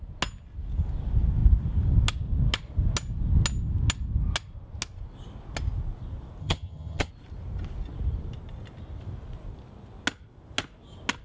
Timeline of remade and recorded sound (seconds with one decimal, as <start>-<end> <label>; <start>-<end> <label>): 0.0-6.4 recorded; 6.4-7.1 remade; 7.1-11.2 recorded

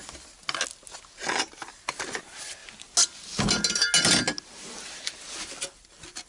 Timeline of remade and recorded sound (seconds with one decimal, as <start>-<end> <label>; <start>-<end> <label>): 0.0-6.3 recorded

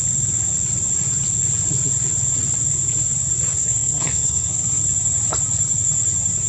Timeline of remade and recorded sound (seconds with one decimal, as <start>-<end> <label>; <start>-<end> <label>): 0.0-3.6 recorded; 3.6-4.8 remade; 4.8-6.5 recorded

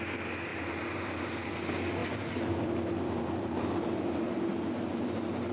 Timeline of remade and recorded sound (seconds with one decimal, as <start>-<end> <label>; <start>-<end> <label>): 0.0-0.5 recorded; 0.5-1.5 remade; 1.5-2.0 recorded; 2.0-5.5 remade

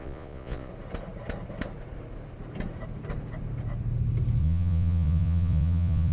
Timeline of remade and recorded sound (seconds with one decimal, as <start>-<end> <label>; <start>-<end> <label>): 0.0-0.7 remade; 0.7-4.4 recorded; 4.4-6.1 remade